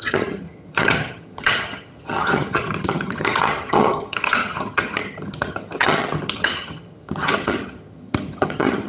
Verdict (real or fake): fake